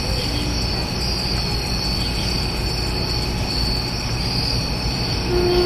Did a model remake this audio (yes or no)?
no